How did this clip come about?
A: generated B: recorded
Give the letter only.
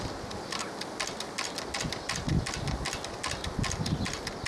B